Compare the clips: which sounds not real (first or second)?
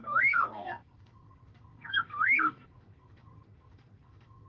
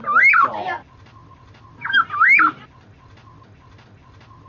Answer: first